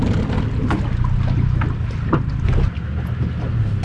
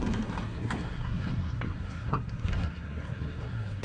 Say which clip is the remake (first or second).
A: second